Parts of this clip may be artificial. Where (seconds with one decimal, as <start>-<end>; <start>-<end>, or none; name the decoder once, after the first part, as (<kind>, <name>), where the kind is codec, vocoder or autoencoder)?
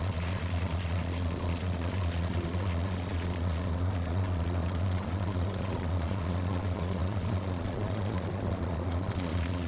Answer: 0.0-9.7 (vocoder, Vocos)